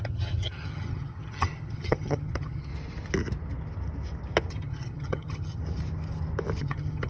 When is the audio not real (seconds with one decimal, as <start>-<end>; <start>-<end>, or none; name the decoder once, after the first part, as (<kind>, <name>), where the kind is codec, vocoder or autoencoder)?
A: 0.0-2.7 (vocoder, HiFi-GAN); 4.5-5.6; 6.6-7.1